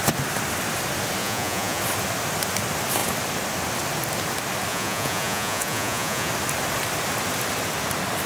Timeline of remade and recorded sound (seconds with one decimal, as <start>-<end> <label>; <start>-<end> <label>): 0.0-1.2 recorded; 1.2-1.8 remade; 1.8-4.7 recorded; 4.7-6.3 remade; 6.3-8.3 recorded